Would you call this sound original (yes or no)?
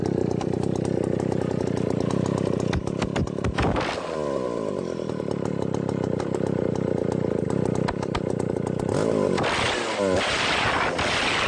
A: yes